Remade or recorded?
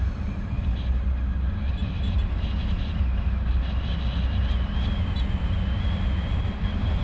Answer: recorded